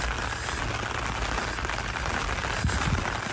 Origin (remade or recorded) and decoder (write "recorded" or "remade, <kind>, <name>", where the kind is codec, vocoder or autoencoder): recorded